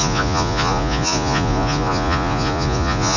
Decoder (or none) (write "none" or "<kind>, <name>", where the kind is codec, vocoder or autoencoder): vocoder, Vocos